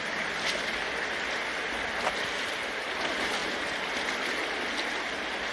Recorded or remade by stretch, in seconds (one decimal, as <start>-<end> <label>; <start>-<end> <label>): 0.0-5.5 recorded